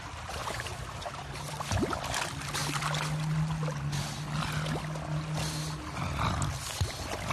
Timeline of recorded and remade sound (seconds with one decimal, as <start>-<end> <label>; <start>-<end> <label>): 0.0-0.4 recorded; 0.4-1.3 remade; 1.3-7.3 recorded